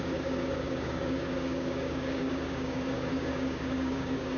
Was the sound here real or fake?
fake